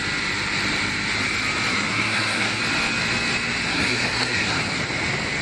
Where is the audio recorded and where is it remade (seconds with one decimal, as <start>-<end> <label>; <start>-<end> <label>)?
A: 0.0-1.7 recorded; 1.7-2.6 remade; 2.6-3.7 recorded; 3.7-4.6 remade; 4.6-5.4 recorded